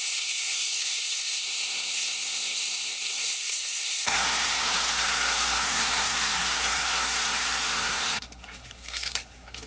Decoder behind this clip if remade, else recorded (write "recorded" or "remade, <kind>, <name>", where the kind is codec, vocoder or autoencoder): remade, codec, SNAC